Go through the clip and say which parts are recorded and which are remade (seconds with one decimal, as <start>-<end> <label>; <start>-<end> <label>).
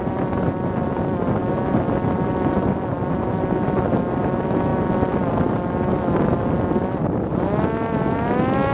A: 0.0-8.7 recorded